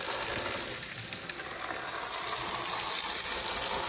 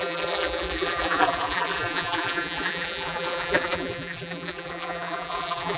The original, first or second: first